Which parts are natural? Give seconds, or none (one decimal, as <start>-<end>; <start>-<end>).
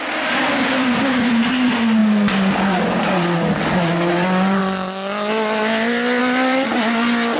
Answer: 2.0-4.1; 4.6-6.2